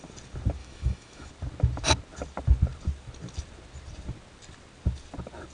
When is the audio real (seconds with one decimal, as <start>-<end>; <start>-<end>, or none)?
0.0-0.6; 1.3-5.5